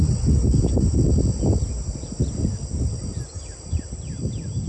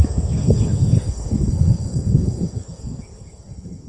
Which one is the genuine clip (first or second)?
first